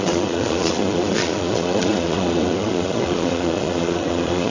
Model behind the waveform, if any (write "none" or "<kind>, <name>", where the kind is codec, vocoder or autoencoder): vocoder, Vocos